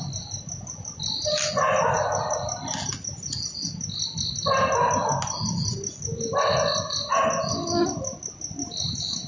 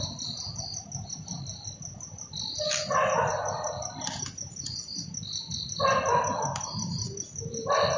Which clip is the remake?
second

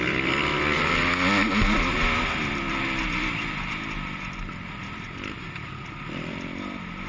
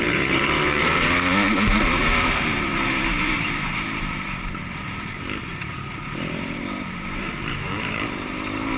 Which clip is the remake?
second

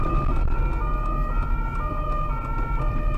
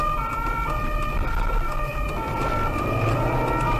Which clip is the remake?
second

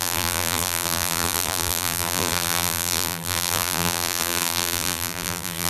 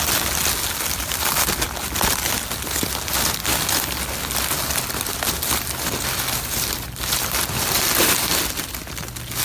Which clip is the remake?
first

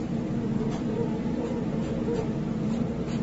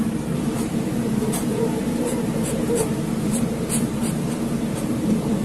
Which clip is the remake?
second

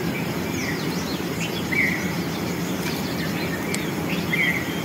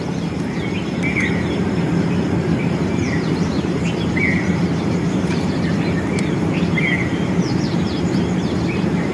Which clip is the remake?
second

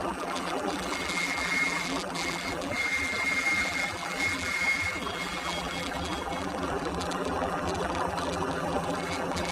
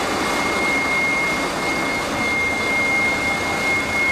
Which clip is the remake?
first